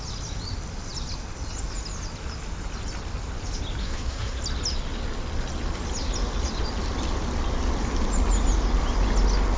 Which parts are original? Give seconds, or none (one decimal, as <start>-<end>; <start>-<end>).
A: 0.0-3.8; 4.4-9.6